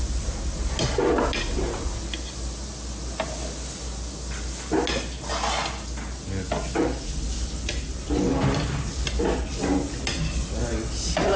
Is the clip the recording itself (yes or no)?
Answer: yes